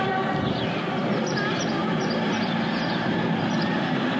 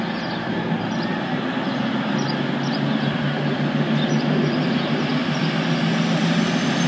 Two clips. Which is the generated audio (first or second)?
first